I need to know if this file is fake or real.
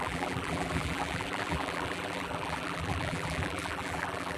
fake